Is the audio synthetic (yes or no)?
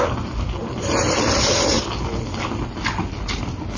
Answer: no